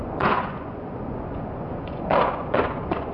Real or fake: fake